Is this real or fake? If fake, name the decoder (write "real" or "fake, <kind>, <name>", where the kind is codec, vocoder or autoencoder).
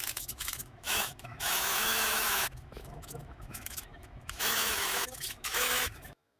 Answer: fake, autoencoder, DAC-VAE